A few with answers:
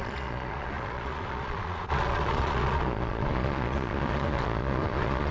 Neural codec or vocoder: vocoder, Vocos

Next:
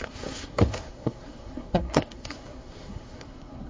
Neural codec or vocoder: codec, SNAC